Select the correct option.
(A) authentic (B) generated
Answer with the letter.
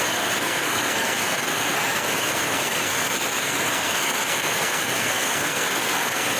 B